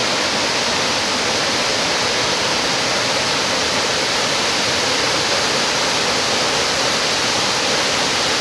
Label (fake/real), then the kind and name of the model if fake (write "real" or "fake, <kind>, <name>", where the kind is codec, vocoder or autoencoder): real